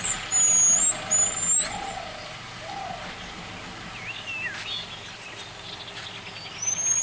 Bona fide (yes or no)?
yes